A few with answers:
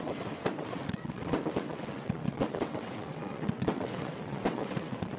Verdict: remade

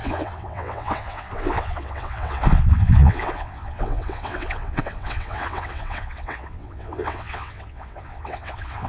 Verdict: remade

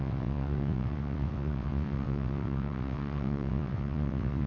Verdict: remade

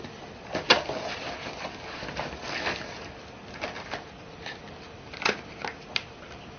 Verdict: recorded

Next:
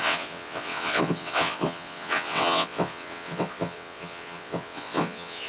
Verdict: remade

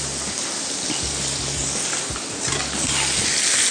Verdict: recorded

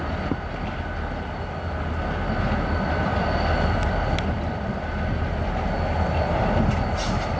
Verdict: recorded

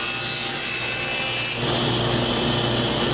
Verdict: recorded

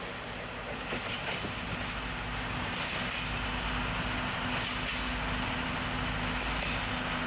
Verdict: recorded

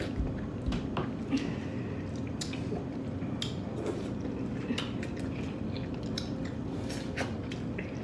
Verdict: recorded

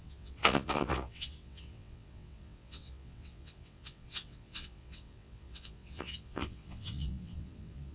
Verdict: remade